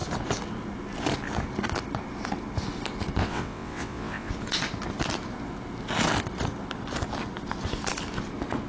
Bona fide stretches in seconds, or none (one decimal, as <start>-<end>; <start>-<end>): 0.0-3.2; 4.3-8.7